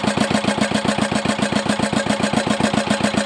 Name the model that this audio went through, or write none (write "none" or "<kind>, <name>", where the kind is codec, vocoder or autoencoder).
none